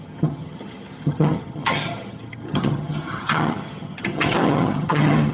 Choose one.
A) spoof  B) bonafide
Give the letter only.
A